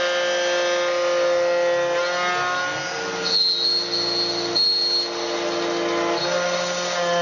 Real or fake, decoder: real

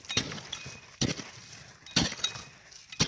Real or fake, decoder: real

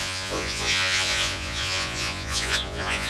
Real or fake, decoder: fake, vocoder, Vocos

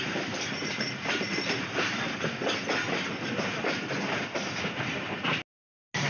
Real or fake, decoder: real